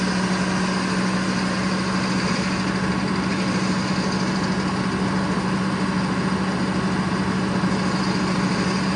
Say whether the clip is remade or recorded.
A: recorded